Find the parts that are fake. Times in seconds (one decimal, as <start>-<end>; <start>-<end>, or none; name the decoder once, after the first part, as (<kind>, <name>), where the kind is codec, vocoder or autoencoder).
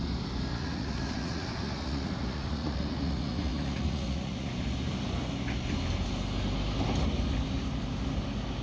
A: 0.5-4.5 (vocoder, Vocos)